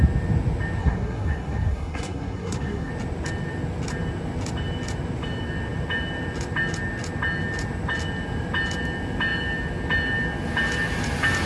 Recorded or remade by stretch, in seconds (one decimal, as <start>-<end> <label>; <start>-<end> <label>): 0.0-0.8 recorded; 0.8-2.9 remade; 2.9-11.5 recorded